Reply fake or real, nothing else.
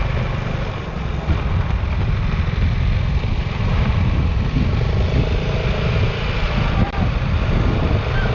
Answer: real